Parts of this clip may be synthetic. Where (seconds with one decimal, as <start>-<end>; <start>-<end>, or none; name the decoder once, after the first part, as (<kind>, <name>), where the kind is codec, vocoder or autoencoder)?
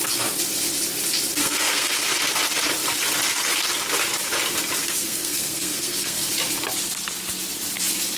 1.4-1.9 (codec, SNAC); 4.8-6.3